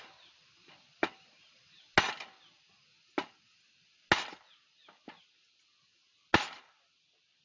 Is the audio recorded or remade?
recorded